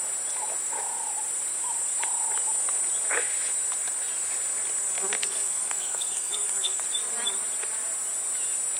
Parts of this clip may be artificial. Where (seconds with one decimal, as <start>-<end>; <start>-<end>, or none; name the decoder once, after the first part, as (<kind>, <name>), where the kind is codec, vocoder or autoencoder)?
5.2-6.8 (codec, SNAC)